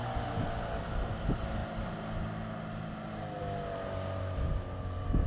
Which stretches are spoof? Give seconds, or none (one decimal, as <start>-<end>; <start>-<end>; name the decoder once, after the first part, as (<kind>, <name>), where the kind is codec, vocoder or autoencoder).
none